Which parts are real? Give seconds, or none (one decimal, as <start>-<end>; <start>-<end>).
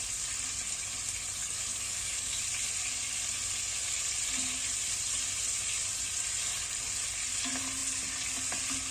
0.0-1.4; 2.4-8.9